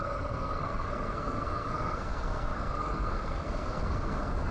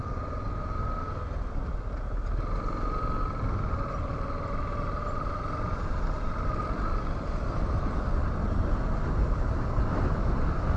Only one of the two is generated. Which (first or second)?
first